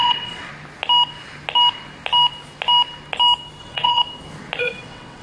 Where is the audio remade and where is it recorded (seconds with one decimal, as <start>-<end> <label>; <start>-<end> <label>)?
0.0-0.5 remade; 0.5-3.6 recorded; 3.6-4.0 remade; 4.0-4.6 recorded; 4.6-5.2 remade